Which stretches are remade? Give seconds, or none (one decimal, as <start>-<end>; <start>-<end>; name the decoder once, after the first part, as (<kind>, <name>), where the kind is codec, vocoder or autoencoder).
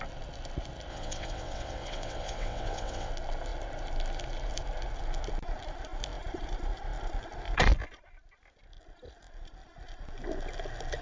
0.9-3.1 (vocoder, WaveNeXt)